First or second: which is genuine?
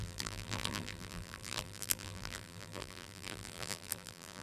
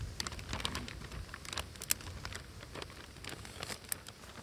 second